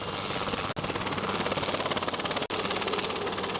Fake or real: real